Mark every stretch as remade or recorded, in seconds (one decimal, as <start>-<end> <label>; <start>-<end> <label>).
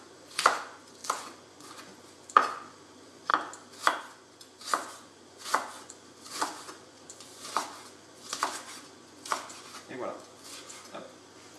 0.0-3.3 remade; 3.3-4.0 recorded; 4.0-11.6 remade